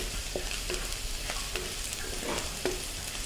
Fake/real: fake